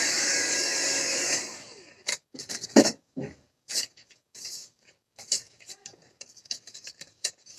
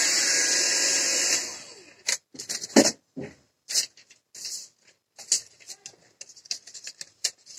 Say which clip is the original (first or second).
second